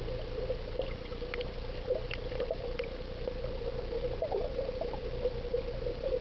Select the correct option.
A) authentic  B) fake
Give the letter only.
A